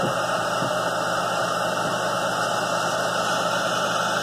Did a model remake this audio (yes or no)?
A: no